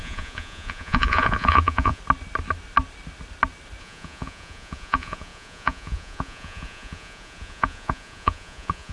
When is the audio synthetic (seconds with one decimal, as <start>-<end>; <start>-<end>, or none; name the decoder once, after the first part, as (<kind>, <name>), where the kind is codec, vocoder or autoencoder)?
0.0-2.0 (vocoder, Vocos); 3.8-8.9